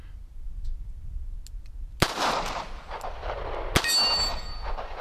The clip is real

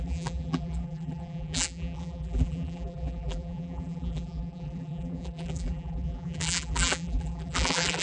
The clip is fake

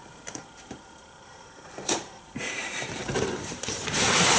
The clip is fake